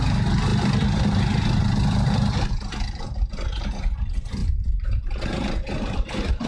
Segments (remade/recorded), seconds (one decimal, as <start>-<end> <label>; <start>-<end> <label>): 0.0-4.4 recorded; 4.4-6.5 remade